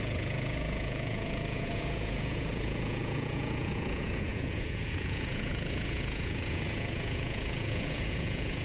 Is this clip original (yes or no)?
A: no